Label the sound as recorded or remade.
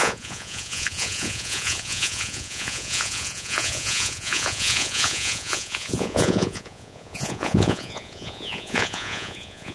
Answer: remade